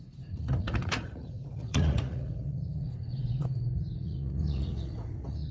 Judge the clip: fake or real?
fake